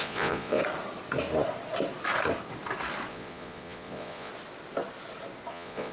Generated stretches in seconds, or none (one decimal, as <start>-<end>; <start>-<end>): 0.0-0.6; 3.1-4.3; 5.5-5.9